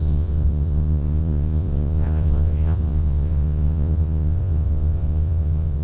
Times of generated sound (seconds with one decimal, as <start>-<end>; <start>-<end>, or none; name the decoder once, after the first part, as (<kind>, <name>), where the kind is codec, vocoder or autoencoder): 0.0-5.8 (vocoder, Vocos)